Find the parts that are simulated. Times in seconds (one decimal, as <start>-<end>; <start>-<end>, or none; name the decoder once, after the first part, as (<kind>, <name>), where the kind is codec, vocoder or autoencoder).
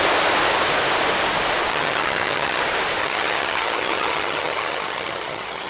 1.7-2.6 (vocoder, HiFi-GAN); 3.0-5.7